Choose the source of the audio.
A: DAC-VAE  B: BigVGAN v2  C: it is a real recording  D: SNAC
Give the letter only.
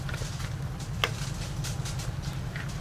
C